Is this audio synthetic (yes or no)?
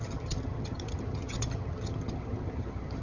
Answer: yes